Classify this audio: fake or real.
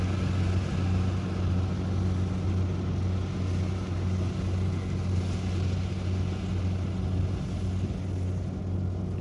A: real